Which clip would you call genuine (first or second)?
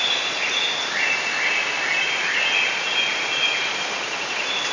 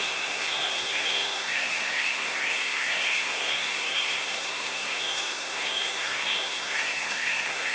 first